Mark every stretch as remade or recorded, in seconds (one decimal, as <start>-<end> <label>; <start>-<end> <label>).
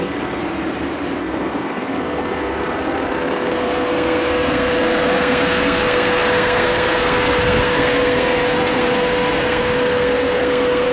0.0-0.4 remade; 0.4-1.2 recorded; 1.2-10.9 remade